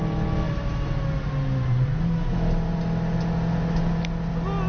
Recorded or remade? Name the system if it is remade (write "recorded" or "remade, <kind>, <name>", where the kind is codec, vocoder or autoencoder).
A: recorded